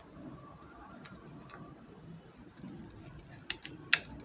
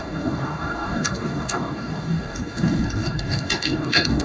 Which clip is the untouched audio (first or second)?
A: first